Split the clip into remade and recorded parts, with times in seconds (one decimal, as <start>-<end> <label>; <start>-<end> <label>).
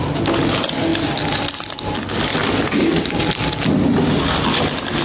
0.0-2.3 recorded; 2.3-4.1 remade; 4.1-5.0 recorded